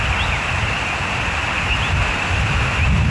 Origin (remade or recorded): recorded